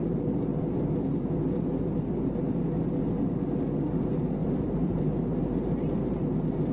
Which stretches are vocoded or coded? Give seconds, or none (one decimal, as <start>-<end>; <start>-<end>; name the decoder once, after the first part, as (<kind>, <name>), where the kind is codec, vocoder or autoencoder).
4.4-5.0 (vocoder, BigVGAN v2)